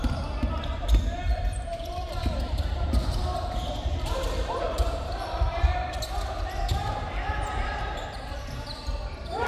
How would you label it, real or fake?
fake